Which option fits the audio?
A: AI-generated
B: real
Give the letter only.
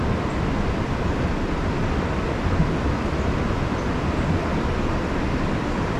B